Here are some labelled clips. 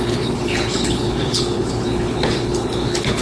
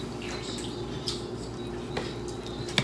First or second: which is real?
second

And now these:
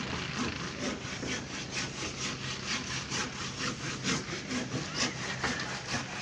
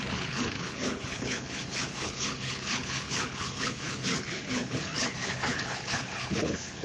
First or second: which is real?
first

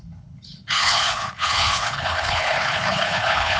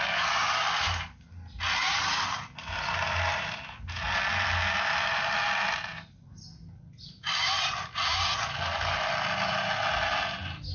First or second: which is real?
second